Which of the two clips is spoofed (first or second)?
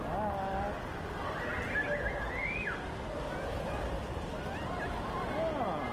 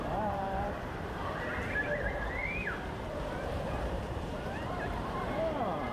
second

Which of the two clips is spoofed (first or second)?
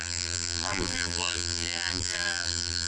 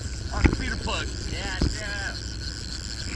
first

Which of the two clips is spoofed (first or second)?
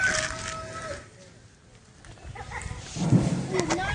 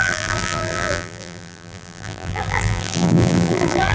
second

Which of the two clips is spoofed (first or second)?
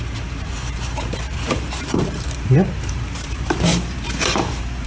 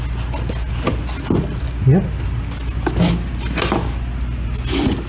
first